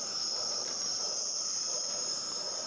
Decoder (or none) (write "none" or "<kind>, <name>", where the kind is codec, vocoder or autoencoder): vocoder, BigVGAN v2